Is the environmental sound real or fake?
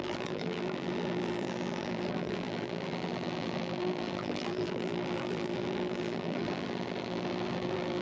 fake